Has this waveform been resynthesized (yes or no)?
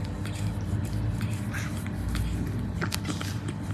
no